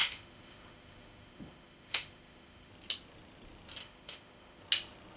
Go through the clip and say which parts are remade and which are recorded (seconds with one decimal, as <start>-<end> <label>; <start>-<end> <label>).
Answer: 0.0-2.7 remade; 2.7-3.8 recorded; 3.8-4.6 remade; 4.6-5.2 recorded